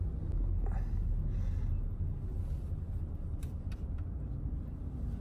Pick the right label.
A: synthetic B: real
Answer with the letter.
B